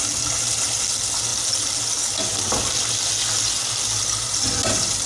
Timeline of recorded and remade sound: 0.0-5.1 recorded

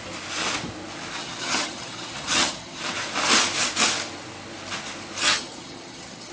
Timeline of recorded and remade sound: 0.0-1.2 recorded; 1.2-2.8 remade; 2.8-5.2 recorded; 5.2-6.3 remade

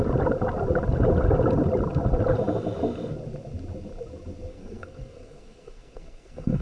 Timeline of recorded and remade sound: 0.0-4.5 recorded; 4.5-6.6 remade